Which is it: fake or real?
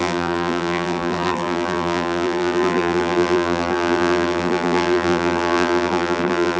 fake